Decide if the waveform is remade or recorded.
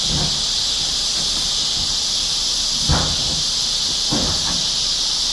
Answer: recorded